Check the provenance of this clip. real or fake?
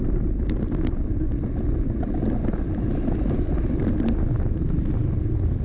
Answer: real